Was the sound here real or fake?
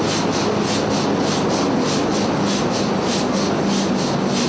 real